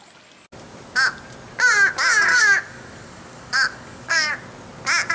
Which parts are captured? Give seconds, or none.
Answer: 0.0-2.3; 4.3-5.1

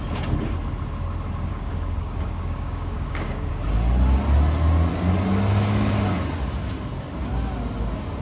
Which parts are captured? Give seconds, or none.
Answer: 0.0-1.5; 3.5-8.2

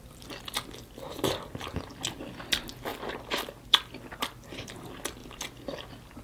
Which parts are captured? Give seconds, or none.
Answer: 0.0-6.2